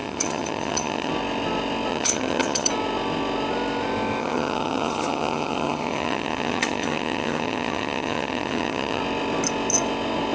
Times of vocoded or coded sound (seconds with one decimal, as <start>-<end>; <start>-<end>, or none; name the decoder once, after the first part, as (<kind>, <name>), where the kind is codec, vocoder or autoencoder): 0.0-1.1 (vocoder, HiFi-GAN); 1.9-2.7; 4.2-9.0